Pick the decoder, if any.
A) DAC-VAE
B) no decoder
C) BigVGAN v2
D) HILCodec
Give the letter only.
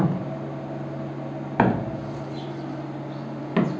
B